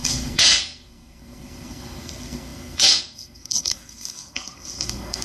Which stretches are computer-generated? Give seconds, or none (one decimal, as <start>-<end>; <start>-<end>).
0.0-5.2